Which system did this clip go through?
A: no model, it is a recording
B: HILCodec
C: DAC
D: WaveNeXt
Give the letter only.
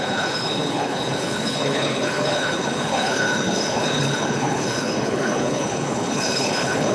B